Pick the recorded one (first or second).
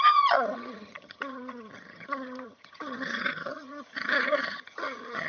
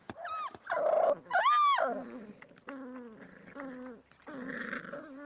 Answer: second